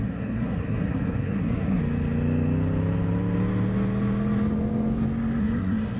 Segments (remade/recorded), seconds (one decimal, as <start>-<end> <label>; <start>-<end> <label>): 0.0-1.8 remade; 1.8-5.4 recorded; 5.4-6.0 remade